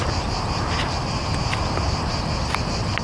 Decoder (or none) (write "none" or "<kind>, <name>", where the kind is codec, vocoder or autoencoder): none